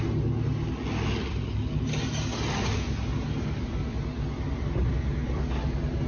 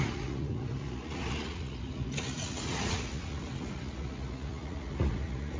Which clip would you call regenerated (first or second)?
second